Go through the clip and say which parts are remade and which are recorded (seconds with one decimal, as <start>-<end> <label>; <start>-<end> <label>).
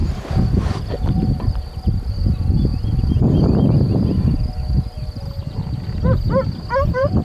0.0-7.2 recorded